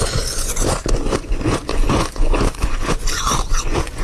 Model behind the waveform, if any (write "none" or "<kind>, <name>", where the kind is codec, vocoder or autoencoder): vocoder, Vocos